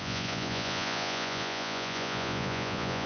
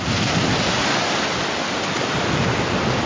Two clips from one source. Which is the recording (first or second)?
second